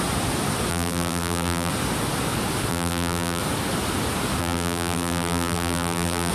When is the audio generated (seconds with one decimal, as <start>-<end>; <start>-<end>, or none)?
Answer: 0.7-1.7; 2.7-3.4; 4.4-6.3